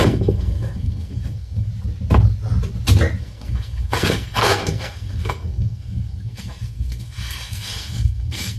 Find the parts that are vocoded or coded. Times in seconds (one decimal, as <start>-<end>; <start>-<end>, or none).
0.0-1.7; 3.2-8.6